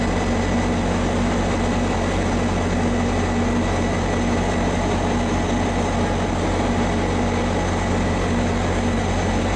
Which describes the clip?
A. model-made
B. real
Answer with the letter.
B